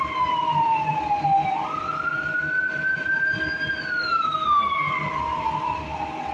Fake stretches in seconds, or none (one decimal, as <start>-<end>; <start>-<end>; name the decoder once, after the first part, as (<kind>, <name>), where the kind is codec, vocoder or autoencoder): 4.1-4.9 (codec, SNAC)